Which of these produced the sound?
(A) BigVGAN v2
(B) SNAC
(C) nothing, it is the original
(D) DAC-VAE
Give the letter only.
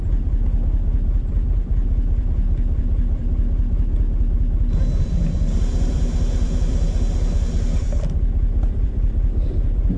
A